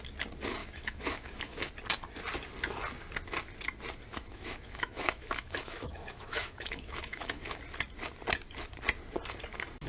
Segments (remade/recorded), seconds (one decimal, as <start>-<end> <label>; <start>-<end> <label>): 0.0-0.6 recorded; 0.6-1.7 remade; 1.7-4.1 recorded; 4.1-7.6 remade; 7.6-9.9 recorded